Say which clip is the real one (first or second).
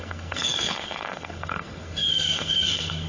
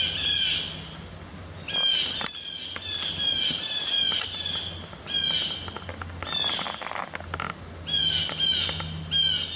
second